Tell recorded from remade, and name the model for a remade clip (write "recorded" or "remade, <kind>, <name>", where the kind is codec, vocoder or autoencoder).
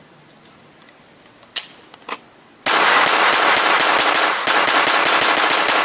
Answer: recorded